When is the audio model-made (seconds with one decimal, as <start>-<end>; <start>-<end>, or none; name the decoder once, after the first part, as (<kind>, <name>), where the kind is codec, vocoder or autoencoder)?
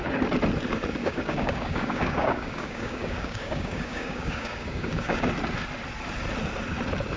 1.0-5.3 (codec, DAC)